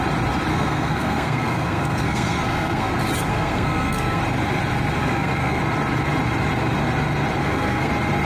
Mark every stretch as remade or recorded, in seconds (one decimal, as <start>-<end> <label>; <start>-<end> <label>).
0.0-0.5 recorded; 0.5-2.9 remade; 2.9-3.3 recorded; 3.3-4.2 remade; 4.2-5.0 recorded; 5.0-5.6 remade; 5.6-7.4 recorded; 7.4-7.9 remade; 7.9-8.3 recorded